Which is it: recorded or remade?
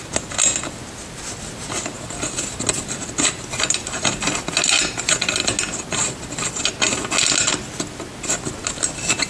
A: recorded